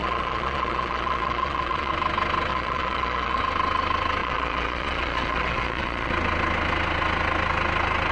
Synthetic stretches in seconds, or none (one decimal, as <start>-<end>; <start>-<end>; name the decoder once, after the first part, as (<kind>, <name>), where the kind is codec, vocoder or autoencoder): 0.0-1.9 (vocoder, Vocos); 2.5-3.4; 4.2-6.1